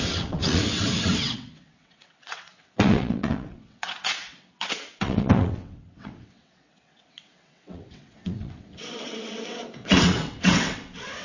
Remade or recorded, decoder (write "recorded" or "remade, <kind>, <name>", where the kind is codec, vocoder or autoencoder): remade, vocoder, WaveNeXt